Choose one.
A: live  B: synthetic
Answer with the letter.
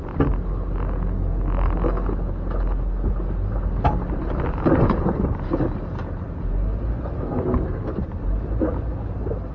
A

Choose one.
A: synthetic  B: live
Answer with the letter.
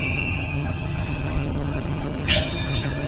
A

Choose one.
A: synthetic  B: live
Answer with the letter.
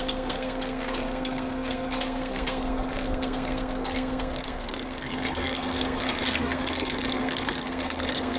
A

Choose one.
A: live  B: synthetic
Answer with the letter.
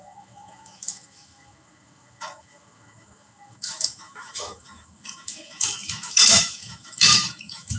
B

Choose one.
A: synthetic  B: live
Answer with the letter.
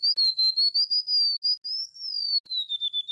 B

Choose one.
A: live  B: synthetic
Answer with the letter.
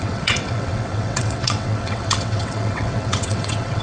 B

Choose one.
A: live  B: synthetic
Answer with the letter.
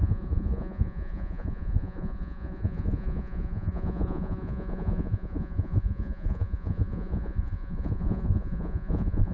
B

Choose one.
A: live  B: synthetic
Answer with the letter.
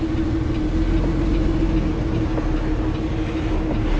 A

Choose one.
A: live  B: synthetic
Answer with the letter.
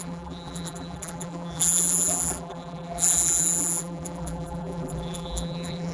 B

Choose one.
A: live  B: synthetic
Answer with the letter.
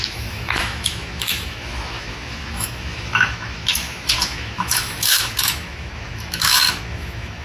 B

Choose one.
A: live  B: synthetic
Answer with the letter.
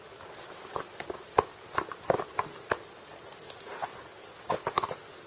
A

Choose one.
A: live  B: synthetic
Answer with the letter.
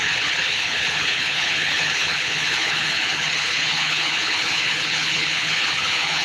B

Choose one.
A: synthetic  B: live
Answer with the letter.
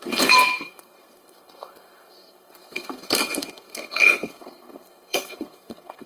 A